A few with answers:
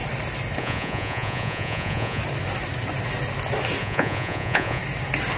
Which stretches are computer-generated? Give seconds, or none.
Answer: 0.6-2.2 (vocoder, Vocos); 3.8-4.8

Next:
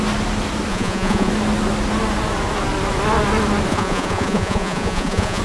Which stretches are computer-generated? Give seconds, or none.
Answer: 0.7-1.3 (vocoder, Vocos); 3.7-5.4

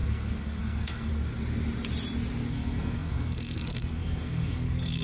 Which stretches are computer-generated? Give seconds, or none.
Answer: 0.0-1.1 (codec, SNAC); 2.5-5.0

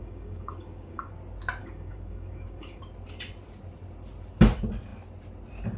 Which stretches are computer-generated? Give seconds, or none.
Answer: 0.0-1.1 (codec, DAC); 1.6-2.8

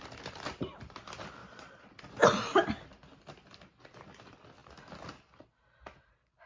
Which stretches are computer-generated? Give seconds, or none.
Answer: 1.4-1.9 (vocoder, Vocos)

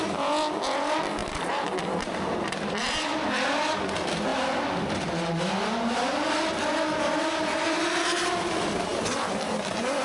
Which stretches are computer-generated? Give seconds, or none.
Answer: none